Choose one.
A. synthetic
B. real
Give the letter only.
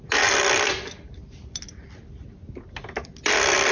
B